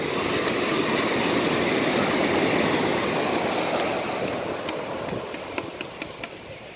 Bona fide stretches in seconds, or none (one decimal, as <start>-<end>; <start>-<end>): 0.0-6.8